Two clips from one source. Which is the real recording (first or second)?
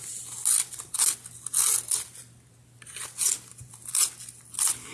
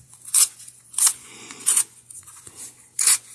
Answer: first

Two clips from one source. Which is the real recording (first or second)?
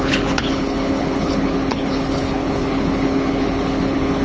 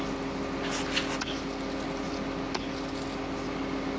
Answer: second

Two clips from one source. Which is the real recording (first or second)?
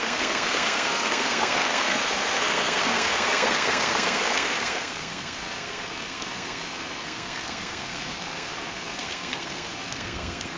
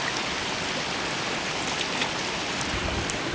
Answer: second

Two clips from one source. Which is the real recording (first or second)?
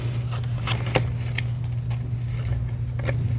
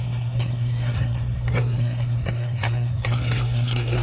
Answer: first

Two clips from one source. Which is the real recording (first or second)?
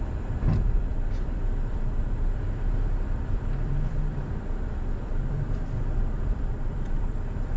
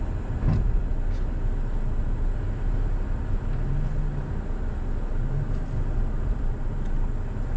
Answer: second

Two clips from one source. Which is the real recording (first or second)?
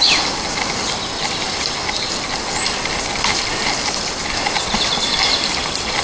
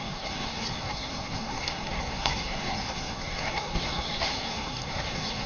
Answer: first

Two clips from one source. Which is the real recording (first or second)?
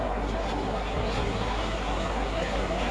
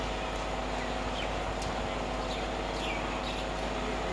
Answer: second